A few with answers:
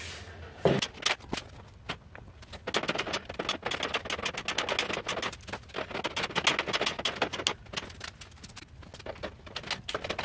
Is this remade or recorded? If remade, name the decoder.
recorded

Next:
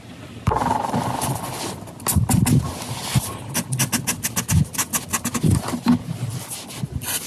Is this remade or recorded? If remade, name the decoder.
recorded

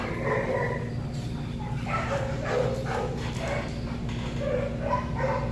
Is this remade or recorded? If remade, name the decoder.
recorded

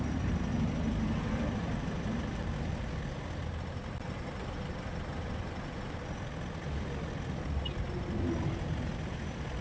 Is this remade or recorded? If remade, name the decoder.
recorded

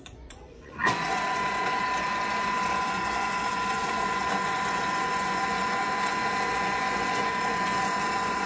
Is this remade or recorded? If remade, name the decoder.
remade, vocoder, Vocos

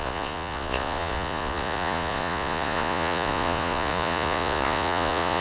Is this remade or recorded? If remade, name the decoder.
remade, vocoder, Vocos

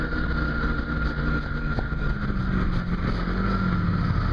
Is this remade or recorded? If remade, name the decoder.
recorded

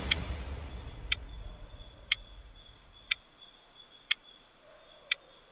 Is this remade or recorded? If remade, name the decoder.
remade, vocoder, Vocos